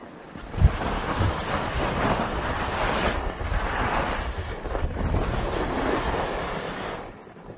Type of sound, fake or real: real